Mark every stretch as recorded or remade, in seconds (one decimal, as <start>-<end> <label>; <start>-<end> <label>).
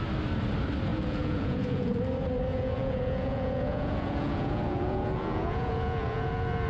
0.0-0.9 recorded; 0.9-2.0 remade; 2.0-2.5 recorded; 2.5-6.7 remade